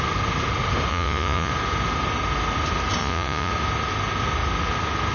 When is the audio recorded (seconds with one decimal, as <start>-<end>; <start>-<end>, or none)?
0.0-0.9; 1.5-3.0; 3.5-5.1